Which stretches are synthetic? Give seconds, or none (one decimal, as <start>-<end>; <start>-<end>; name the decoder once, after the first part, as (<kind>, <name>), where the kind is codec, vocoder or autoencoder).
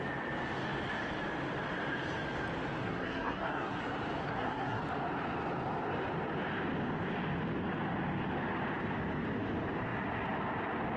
2.8-3.8 (codec, SNAC); 4.2-4.8